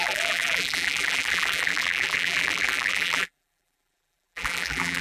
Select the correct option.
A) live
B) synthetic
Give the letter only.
B